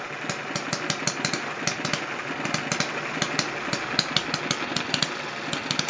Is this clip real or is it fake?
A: real